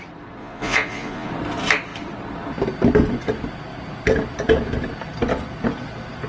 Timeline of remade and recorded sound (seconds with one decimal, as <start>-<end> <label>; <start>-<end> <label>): 0.0-0.4 recorded; 0.4-1.3 remade; 1.3-6.3 recorded